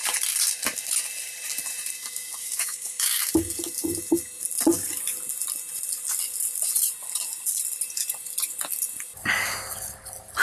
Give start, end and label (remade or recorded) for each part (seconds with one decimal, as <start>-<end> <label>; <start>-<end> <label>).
0.0-2.4 recorded; 2.4-3.3 remade; 3.3-10.4 recorded